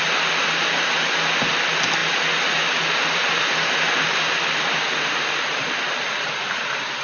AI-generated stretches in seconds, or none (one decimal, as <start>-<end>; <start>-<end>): none